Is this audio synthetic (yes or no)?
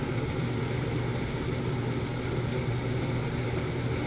no